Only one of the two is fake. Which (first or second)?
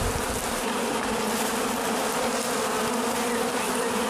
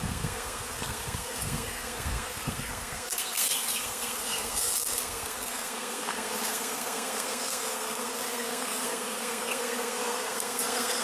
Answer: second